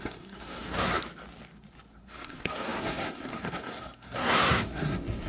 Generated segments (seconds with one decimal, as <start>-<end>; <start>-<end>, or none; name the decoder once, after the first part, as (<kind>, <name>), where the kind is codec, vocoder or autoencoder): 0.0-1.0 (codec, SNAC); 2.0-5.3